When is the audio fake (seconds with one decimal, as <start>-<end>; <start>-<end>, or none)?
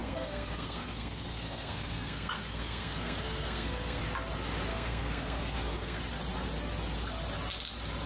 0.0-4.0; 4.7-6.0